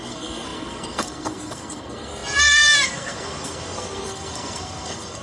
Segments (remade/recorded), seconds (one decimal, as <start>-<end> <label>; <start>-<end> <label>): 0.0-5.2 remade